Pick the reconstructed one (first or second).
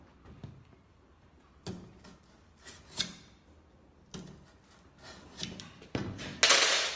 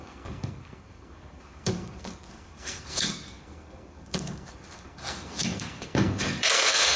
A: second